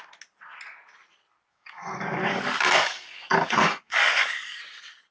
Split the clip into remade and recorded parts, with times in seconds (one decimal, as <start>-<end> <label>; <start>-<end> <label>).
0.0-1.5 recorded; 1.5-4.6 remade; 4.6-5.1 recorded